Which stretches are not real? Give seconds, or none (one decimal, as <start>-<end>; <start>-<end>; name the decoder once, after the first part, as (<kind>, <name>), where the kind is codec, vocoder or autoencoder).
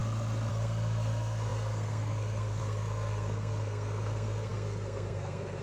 0.5-5.6 (codec, SNAC)